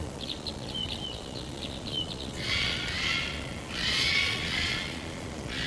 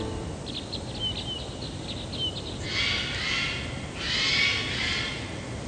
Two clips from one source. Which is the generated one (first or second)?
first